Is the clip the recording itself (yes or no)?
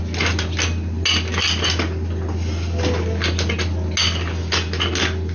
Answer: yes